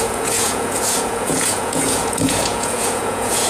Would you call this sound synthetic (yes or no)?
yes